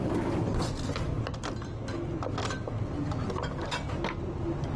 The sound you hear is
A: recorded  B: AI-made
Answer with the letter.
A